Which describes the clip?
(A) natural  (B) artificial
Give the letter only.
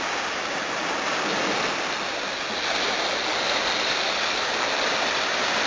A